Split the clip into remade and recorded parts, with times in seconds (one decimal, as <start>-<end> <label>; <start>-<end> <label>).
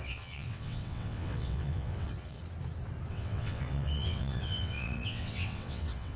0.0-2.4 remade; 2.4-3.1 recorded; 3.1-6.2 remade